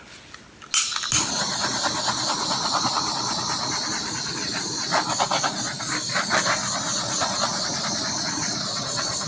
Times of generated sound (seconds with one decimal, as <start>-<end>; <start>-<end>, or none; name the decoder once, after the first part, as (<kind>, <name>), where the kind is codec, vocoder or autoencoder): none